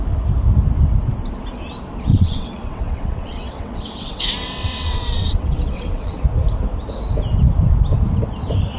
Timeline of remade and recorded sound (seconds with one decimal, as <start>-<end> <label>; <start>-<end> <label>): 0.0-2.1 recorded; 2.1-6.2 remade; 6.2-8.8 recorded